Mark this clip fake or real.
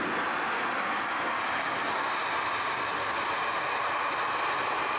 real